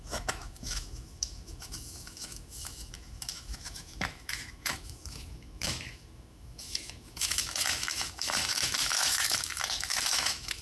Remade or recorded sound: remade